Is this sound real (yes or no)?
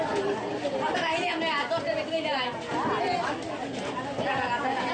yes